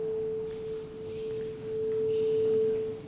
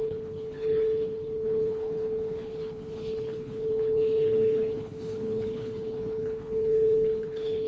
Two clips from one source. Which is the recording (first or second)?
first